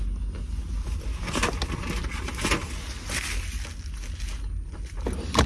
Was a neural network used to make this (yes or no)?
no